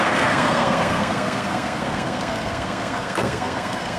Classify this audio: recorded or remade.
remade